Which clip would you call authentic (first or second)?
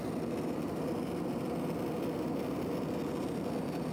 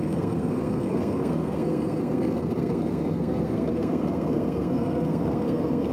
first